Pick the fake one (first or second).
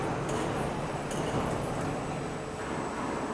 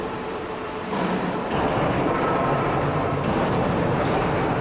second